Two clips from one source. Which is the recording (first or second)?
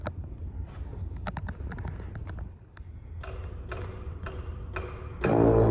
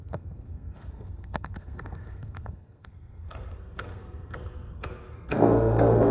first